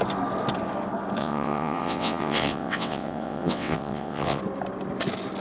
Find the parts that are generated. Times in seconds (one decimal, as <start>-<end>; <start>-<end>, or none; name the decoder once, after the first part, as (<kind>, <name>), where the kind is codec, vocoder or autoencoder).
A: 1.2-4.4 (vocoder, WaveNeXt)